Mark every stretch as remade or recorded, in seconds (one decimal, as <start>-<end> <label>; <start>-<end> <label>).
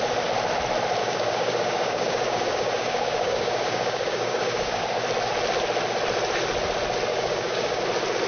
0.0-1.0 recorded; 1.0-4.8 remade; 4.8-7.1 recorded; 7.1-7.8 remade; 7.8-8.3 recorded